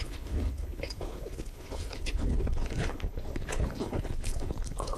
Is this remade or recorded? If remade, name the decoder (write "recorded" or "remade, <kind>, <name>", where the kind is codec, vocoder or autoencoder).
remade, codec, HILCodec